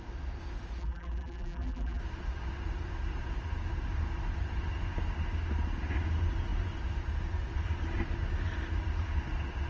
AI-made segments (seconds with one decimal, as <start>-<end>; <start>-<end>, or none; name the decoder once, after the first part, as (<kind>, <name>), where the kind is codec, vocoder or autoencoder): 0.8-2.0 (vocoder, BigVGAN v2)